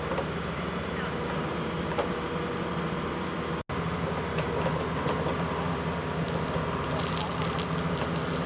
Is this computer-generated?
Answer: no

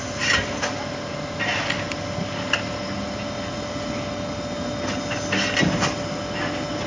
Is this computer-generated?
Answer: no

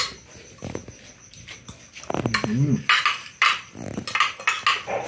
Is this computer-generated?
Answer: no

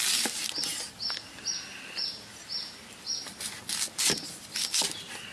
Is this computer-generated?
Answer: no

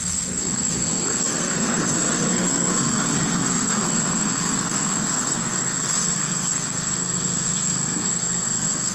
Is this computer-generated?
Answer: yes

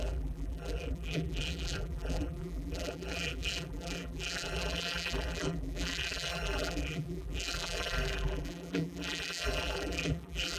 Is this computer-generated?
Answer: yes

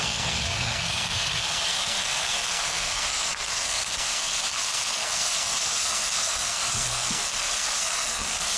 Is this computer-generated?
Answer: yes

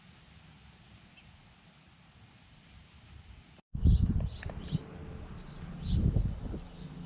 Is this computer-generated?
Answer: no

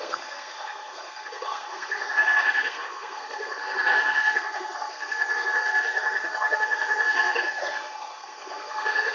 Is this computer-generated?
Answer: yes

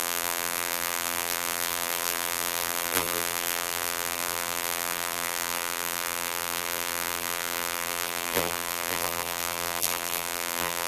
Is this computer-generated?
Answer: yes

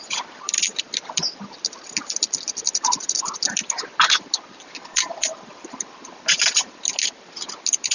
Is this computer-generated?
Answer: no